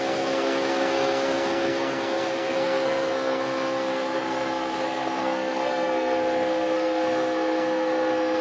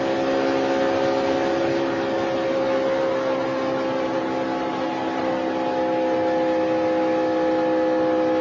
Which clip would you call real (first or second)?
second